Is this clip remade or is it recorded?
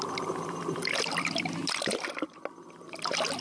recorded